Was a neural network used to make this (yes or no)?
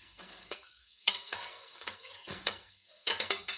yes